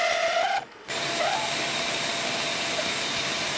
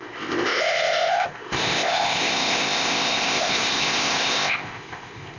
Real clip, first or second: first